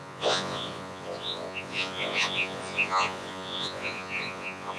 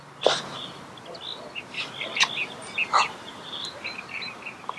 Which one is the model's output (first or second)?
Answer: first